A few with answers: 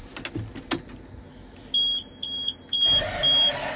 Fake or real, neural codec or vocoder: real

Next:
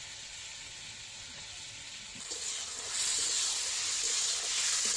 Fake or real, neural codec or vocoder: real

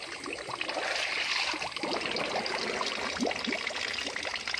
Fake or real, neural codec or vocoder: real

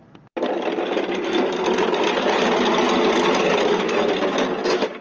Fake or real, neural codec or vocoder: real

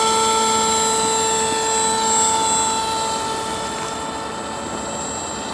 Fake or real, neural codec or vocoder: real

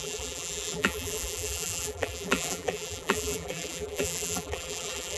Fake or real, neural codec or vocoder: fake, vocoder, BigVGAN v2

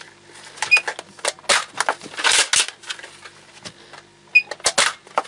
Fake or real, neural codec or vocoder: real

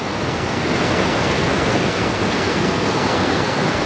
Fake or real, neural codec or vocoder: fake, codec, SNAC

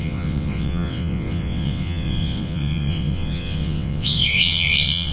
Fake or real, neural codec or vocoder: fake, vocoder, WaveNeXt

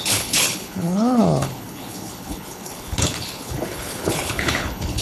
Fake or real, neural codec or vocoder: fake, codec, HILCodec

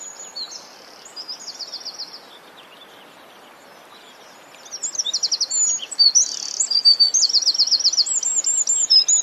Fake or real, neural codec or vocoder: real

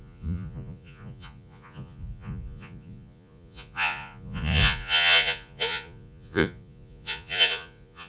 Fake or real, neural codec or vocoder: fake, vocoder, Vocos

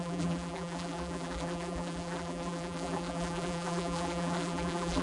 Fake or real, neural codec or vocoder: fake, vocoder, BigVGAN v2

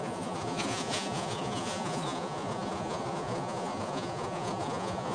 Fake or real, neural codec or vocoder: fake, vocoder, Vocos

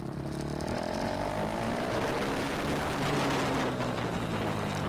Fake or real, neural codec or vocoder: real